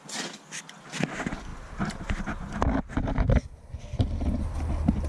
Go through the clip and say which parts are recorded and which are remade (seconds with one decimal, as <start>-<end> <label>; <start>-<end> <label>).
0.0-5.1 recorded